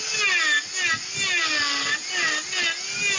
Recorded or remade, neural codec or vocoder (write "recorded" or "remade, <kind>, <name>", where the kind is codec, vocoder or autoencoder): recorded